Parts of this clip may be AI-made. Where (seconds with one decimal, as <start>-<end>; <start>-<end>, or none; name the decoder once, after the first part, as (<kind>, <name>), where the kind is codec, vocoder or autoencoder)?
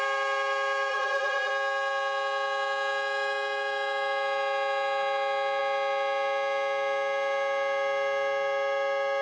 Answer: 0.9-1.5 (vocoder, Vocos)